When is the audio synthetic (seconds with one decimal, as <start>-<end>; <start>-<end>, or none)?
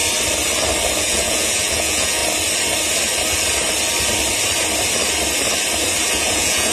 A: 1.0-2.2; 6.1-6.7